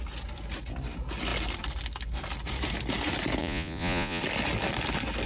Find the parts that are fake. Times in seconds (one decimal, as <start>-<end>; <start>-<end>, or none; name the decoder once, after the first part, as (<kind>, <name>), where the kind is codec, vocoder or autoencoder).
3.4-4.2 (vocoder, Vocos)